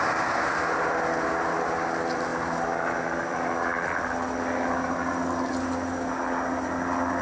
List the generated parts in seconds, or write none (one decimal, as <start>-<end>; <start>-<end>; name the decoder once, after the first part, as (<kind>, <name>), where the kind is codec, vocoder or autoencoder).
none